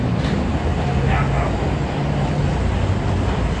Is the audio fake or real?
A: real